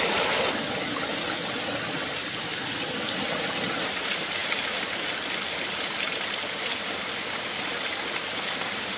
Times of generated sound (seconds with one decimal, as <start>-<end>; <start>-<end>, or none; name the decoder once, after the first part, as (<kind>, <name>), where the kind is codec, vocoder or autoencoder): none